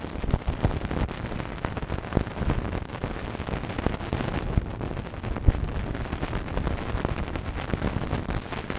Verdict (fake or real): real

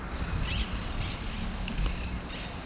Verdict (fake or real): real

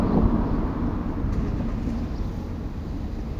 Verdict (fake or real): real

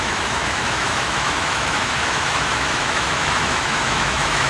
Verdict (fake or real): fake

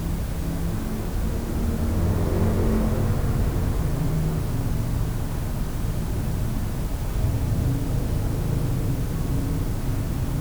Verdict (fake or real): real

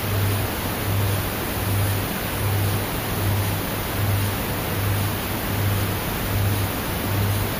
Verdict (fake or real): real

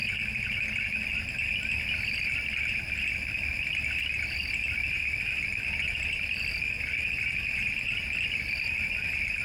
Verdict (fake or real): real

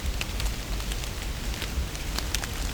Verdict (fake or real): real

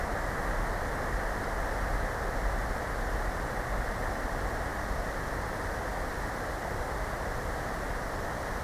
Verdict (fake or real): real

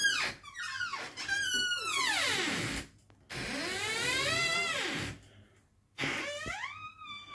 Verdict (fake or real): real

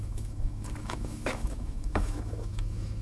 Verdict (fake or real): fake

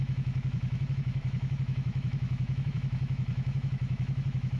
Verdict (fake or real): fake